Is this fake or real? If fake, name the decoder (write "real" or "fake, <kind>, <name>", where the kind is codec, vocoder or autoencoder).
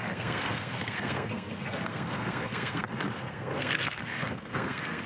fake, codec, SNAC